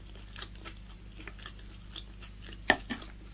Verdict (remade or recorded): recorded